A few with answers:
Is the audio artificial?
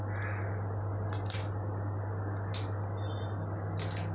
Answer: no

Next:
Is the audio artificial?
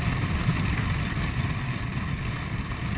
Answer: no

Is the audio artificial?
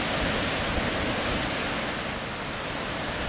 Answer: no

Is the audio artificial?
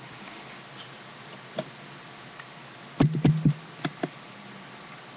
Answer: no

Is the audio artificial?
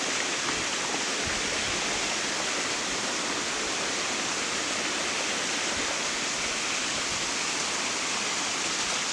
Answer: no